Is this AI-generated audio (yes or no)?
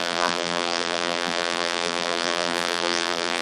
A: yes